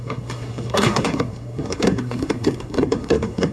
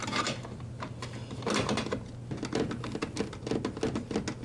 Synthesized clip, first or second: first